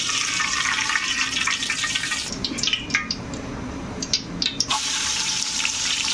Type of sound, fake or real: fake